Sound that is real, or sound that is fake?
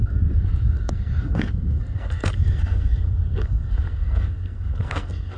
fake